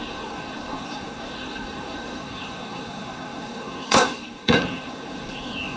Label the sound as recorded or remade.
remade